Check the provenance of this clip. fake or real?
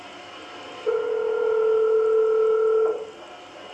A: real